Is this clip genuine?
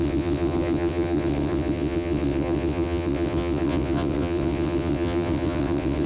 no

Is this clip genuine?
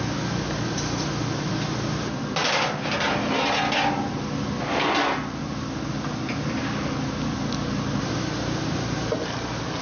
yes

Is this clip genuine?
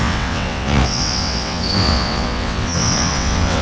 no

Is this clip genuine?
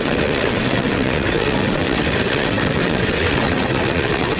no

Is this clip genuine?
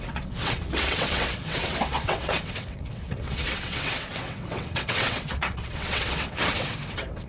no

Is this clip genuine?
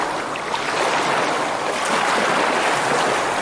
yes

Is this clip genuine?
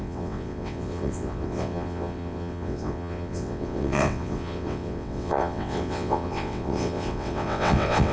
no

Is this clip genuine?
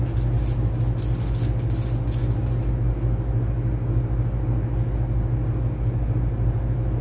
yes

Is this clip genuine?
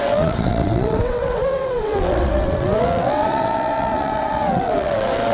no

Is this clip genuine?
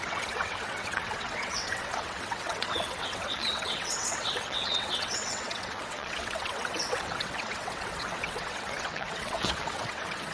no